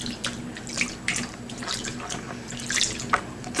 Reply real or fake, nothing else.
real